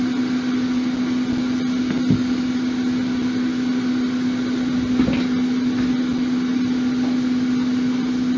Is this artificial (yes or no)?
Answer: no